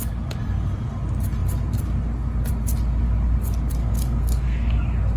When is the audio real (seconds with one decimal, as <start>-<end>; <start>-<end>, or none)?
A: 0.0-3.8; 4.8-5.2